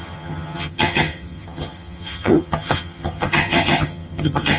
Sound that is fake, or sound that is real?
fake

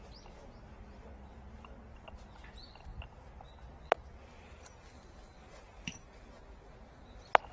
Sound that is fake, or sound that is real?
real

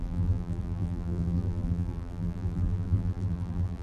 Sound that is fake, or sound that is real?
fake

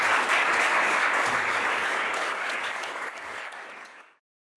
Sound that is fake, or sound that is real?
fake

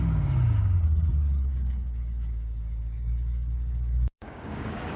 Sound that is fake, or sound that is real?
fake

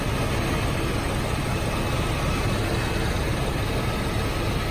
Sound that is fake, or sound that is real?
real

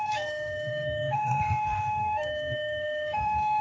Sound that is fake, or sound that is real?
fake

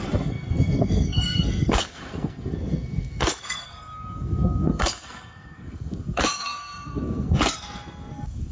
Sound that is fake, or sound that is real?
fake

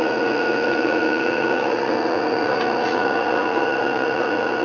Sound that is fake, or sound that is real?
fake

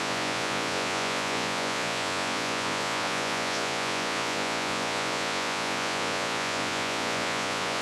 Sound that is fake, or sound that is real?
fake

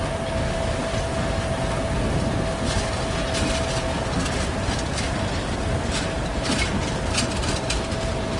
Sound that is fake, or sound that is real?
real